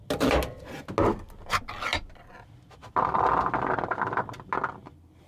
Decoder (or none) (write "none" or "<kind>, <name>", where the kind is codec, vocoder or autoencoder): none